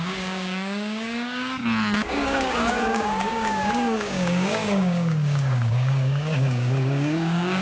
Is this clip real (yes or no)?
no